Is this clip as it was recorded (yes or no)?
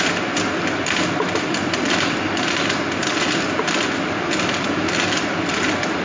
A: yes